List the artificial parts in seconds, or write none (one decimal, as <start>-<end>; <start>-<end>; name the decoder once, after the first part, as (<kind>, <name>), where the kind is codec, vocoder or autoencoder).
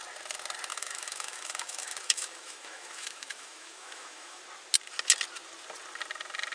0.7-4.4 (autoencoder, DAC-VAE)